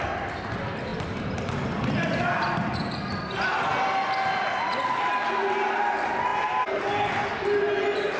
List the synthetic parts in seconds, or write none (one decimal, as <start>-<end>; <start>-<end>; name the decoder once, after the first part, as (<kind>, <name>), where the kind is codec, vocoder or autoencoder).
none